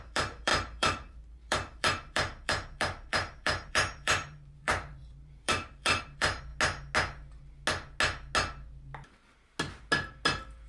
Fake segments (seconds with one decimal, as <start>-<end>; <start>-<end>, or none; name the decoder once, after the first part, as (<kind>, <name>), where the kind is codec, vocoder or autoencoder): 0.0-6.5 (vocoder, BigVGAN v2)